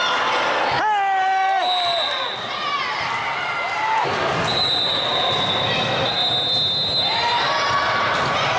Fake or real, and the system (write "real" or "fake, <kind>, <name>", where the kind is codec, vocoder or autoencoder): real